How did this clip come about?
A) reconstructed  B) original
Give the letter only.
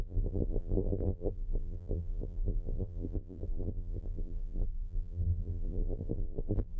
A